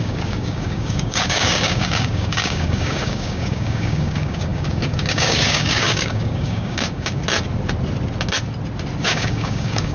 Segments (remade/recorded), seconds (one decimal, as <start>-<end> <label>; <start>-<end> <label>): 0.0-7.2 remade; 7.2-9.0 recorded; 9.0-9.9 remade